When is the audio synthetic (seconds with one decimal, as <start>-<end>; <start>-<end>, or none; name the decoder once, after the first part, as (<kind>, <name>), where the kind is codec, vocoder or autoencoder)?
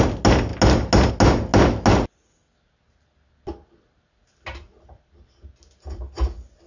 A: none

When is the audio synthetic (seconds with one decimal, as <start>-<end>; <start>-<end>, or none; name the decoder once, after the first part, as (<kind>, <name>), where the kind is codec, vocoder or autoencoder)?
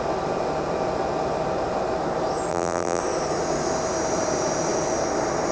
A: 2.5-3.0 (vocoder, BigVGAN v2)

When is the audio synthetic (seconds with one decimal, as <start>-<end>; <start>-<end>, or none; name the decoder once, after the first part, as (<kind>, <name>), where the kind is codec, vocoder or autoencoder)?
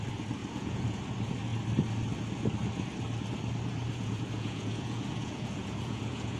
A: 0.4-1.0 (vocoder, Vocos); 3.8-6.4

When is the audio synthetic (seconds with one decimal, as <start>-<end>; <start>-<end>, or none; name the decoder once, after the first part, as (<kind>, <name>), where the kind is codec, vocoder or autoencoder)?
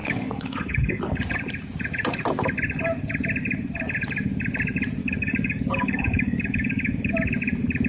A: 0.0-1.0 (codec, DAC); 5.0-7.1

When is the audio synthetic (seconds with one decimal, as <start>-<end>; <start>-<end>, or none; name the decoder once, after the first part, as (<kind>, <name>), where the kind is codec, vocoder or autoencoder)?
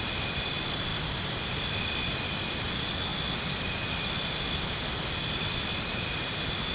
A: none